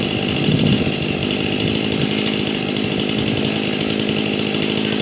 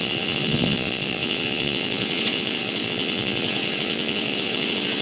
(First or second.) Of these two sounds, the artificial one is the second